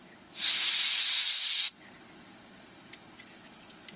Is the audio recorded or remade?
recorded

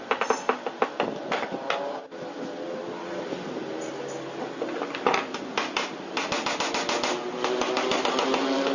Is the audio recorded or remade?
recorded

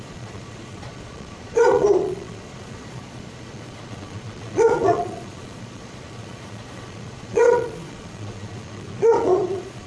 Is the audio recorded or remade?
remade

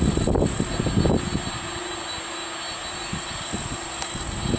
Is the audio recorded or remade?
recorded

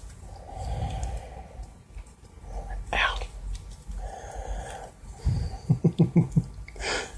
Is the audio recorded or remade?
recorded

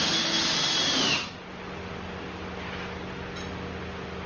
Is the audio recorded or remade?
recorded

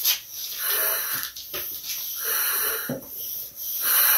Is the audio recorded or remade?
recorded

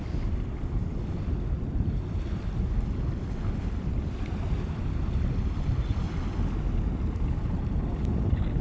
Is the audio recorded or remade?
recorded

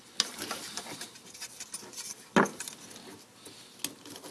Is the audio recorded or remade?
recorded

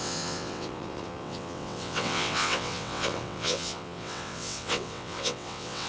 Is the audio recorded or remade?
remade